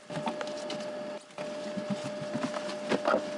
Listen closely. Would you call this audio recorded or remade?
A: recorded